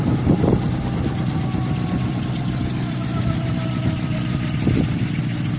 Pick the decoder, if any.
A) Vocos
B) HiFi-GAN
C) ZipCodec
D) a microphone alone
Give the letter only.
D